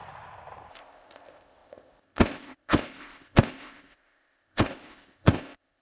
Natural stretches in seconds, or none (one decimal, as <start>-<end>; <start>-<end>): 0.0-0.7